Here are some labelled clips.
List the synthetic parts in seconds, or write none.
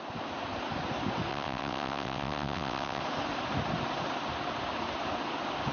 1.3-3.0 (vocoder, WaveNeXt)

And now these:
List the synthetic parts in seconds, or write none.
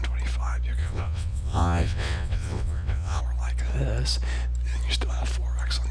0.8-3.2 (vocoder, WaveNeXt)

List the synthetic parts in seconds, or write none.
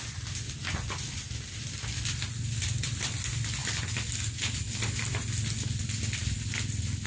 none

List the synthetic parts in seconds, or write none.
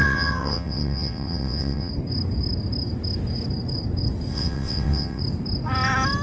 0.0-1.9 (vocoder, WaveNeXt); 4.3-5.2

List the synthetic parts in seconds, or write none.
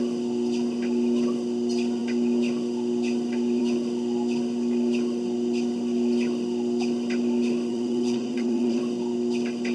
7.7-8.8 (vocoder, WaveNeXt)